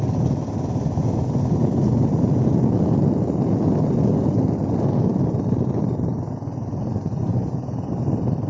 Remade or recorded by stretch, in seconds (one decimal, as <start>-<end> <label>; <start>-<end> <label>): 0.0-7.2 recorded; 7.2-7.9 remade; 7.9-8.5 recorded